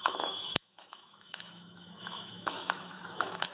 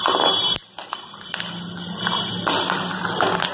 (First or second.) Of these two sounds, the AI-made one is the first